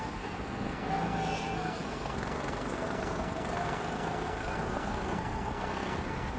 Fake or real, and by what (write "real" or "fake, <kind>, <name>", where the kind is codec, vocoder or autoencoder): fake, codec, SNAC